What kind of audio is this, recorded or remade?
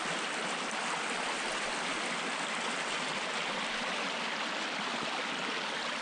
recorded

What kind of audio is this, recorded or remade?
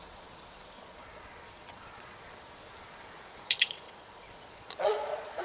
remade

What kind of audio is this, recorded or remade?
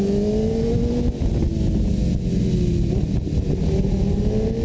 recorded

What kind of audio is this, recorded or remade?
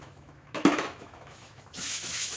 remade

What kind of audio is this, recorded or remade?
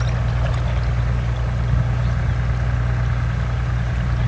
recorded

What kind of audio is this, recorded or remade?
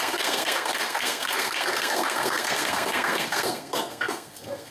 remade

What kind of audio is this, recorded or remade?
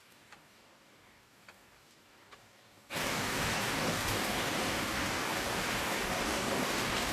remade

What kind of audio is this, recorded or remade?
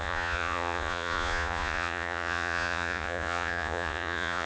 remade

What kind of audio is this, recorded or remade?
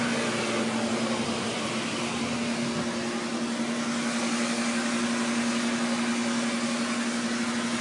recorded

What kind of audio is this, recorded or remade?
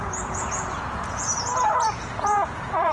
remade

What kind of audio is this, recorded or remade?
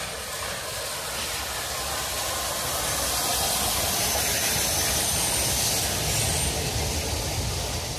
recorded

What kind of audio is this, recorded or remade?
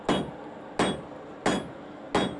recorded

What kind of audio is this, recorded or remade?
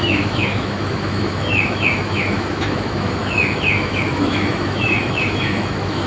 remade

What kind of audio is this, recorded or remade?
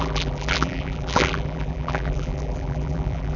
remade